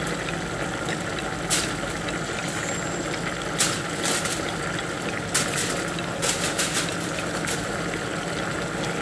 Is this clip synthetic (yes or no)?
no